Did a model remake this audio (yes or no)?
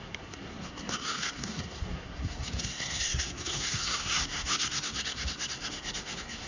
yes